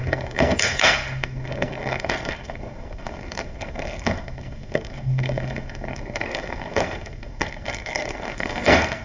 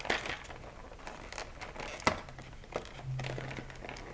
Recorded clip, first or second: second